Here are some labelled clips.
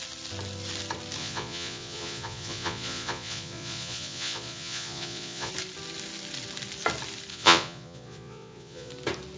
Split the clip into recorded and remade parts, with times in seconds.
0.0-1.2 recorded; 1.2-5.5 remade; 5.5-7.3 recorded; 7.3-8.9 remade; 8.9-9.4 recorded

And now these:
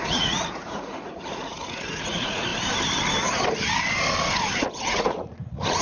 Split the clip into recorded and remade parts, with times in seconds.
0.0-2.5 remade; 2.5-4.9 recorded; 4.9-5.8 remade

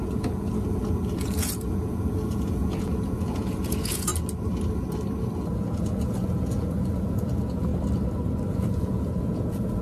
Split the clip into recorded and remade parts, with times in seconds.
0.0-4.1 remade; 4.1-5.5 recorded; 5.5-7.7 remade; 7.7-8.5 recorded; 8.5-9.8 remade

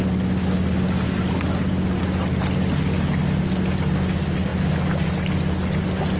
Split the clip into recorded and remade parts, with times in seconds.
0.0-6.2 recorded

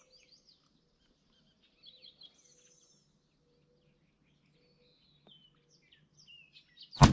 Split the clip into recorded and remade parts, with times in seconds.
0.0-7.1 recorded

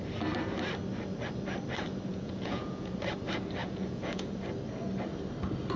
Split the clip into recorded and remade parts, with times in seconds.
0.0-2.1 recorded; 2.1-2.9 remade; 2.9-3.6 recorded; 3.6-4.3 remade; 4.3-5.8 recorded

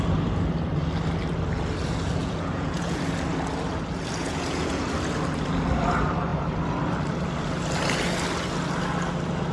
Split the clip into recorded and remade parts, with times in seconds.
0.0-2.2 recorded; 2.2-3.0 remade; 3.0-4.2 recorded; 4.2-4.9 remade; 4.9-9.5 recorded

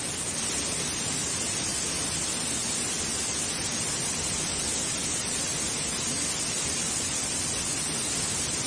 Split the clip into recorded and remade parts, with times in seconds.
0.0-8.7 recorded